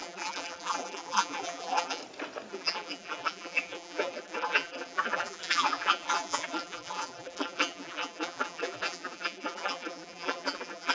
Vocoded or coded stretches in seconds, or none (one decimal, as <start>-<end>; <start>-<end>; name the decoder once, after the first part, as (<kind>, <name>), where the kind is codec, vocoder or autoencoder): 0.0-2.0 (vocoder, BigVGAN v2); 2.5-10.9